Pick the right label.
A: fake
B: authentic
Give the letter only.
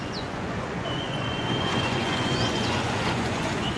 A